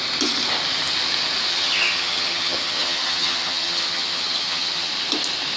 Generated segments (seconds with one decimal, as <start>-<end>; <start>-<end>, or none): 1.5-4.9